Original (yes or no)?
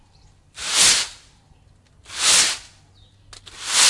yes